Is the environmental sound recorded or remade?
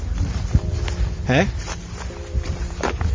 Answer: remade